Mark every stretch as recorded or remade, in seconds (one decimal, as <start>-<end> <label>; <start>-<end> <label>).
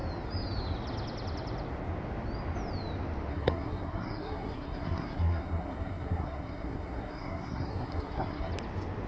0.0-3.3 recorded; 3.3-8.5 remade; 8.5-9.1 recorded